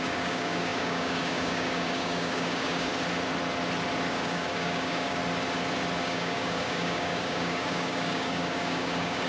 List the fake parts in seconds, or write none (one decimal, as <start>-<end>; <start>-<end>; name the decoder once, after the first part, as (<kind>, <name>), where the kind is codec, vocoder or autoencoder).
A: 0.0-2.9 (codec, DAC); 4.1-5.2; 6.0-9.3